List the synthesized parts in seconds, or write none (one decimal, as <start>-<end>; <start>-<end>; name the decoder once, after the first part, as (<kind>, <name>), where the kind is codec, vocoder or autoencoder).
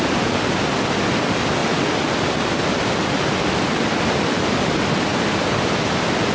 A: 5.1-6.3 (vocoder, BigVGAN v2)